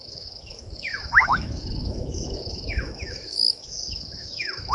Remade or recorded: remade